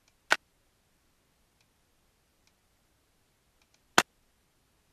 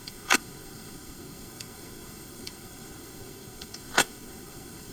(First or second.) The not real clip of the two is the second